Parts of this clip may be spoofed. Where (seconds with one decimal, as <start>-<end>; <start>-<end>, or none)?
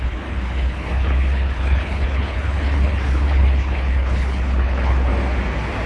0.0-5.1